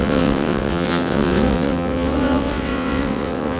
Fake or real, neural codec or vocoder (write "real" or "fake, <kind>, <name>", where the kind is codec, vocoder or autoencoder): fake, vocoder, WaveNeXt